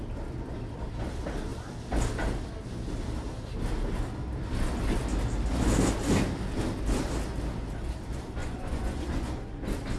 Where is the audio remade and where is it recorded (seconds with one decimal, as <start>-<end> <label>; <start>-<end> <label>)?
0.0-8.4 recorded; 8.4-9.5 remade; 9.5-10.0 recorded